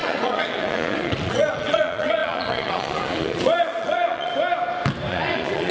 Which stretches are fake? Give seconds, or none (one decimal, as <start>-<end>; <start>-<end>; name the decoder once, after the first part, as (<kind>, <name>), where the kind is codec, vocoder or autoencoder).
0.0-4.3 (vocoder, Vocos); 5.1-5.7